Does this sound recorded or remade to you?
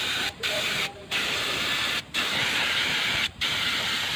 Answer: remade